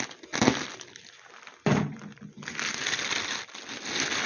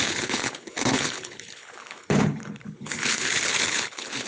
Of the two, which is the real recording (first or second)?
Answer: first